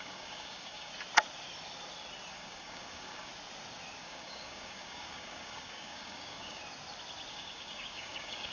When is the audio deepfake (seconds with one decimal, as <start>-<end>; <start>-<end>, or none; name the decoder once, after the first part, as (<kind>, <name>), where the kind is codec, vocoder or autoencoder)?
0.0-0.9 (codec, DAC); 2.3-3.3; 4.0-6.6; 7.3-8.5